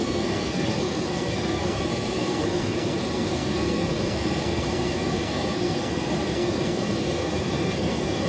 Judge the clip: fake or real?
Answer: fake